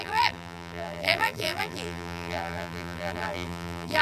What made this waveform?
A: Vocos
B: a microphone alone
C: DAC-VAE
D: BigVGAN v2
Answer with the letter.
D